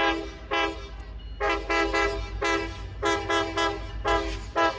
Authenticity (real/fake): real